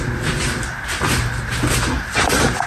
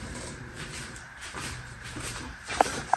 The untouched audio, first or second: first